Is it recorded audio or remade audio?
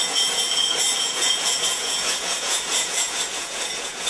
remade